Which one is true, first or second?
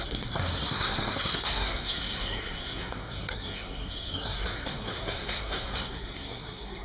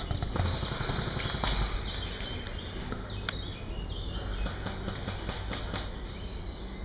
second